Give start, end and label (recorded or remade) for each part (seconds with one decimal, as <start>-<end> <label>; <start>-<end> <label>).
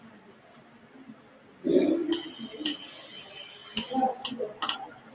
0.0-5.1 recorded